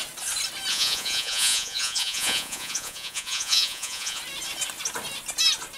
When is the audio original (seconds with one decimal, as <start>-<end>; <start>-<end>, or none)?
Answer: 0.0-0.7; 4.2-5.8